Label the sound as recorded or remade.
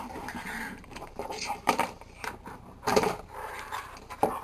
remade